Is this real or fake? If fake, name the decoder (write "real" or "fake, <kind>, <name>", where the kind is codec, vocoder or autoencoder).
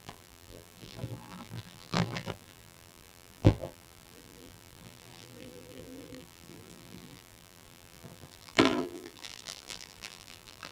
fake, vocoder, BigVGAN v2